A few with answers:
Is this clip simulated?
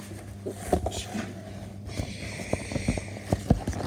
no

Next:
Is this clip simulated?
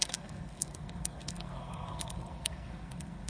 yes